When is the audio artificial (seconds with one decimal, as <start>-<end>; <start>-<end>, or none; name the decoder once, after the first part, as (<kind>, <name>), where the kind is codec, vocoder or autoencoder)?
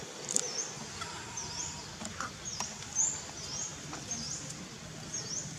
3.7-5.6 (vocoder, BigVGAN v2)